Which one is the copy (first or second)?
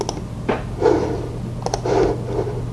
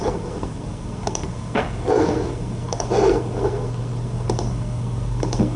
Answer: second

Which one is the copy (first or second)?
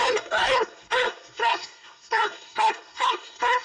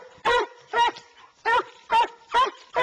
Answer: first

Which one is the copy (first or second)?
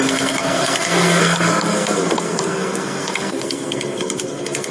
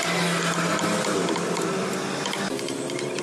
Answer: first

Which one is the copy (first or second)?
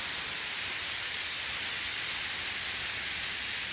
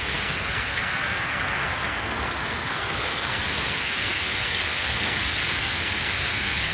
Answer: second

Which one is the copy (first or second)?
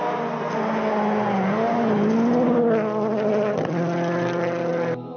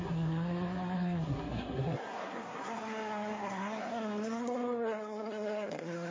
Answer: second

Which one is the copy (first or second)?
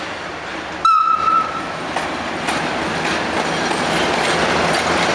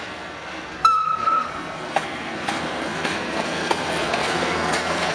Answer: second